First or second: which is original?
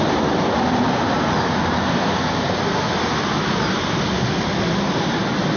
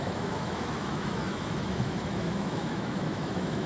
first